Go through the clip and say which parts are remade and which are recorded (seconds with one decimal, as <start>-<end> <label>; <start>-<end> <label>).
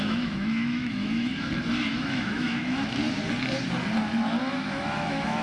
0.0-1.3 remade; 1.3-1.9 recorded; 1.9-3.0 remade; 3.0-4.5 recorded; 4.5-5.4 remade